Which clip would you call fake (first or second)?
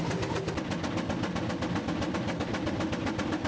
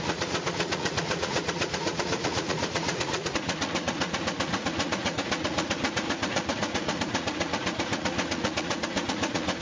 second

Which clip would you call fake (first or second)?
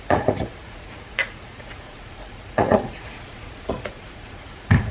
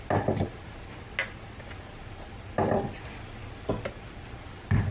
first